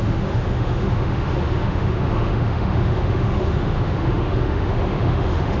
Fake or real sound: fake